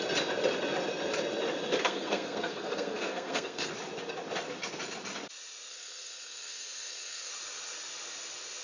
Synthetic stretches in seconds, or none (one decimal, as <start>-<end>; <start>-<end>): 1.8-3.7; 5.7-7.3